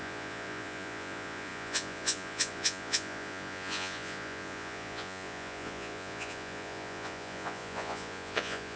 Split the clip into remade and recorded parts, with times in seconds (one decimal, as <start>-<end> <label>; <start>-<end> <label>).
0.0-8.8 remade